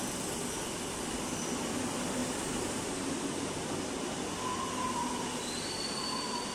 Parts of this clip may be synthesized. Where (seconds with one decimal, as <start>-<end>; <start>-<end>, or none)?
2.2-3.1